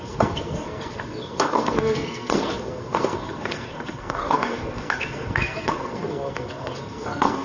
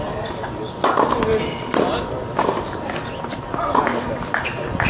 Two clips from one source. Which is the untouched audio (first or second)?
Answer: second